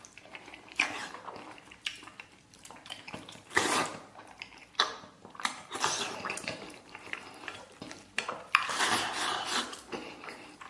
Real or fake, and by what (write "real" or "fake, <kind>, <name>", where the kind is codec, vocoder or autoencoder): fake, vocoder, BigVGAN v2